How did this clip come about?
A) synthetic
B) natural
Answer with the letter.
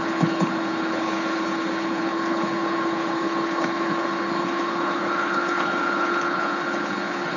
A